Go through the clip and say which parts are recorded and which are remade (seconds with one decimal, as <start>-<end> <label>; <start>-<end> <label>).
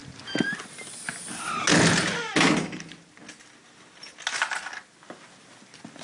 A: 0.0-6.0 recorded